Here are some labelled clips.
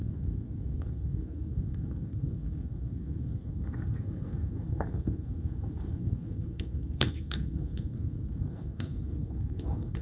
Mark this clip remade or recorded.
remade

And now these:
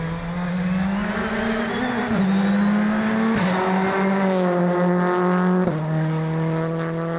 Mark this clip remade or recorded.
recorded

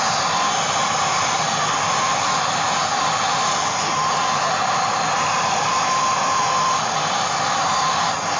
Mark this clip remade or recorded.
recorded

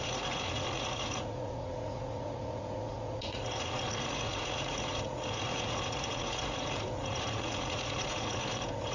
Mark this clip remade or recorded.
remade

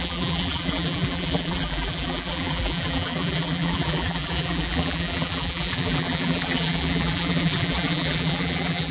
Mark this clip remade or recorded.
remade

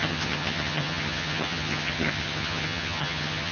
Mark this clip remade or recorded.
remade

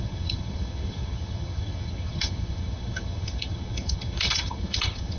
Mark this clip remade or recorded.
remade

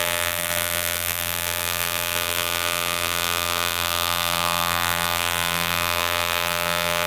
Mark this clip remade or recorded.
remade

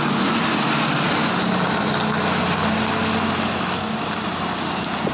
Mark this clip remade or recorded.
recorded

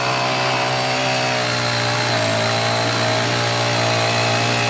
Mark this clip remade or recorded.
recorded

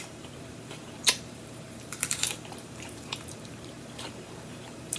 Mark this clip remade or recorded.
remade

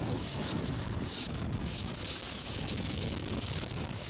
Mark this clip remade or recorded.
remade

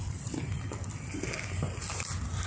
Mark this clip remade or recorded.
recorded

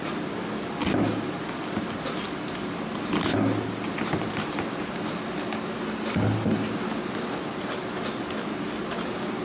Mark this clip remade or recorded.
recorded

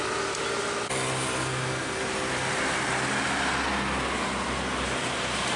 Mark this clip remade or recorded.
recorded